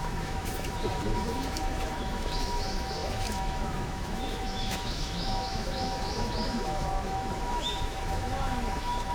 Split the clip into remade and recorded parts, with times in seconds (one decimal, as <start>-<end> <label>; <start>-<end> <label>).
0.0-9.1 remade